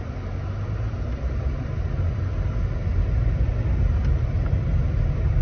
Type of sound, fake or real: real